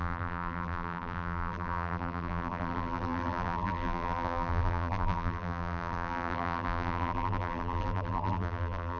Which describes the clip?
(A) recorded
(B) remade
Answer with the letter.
B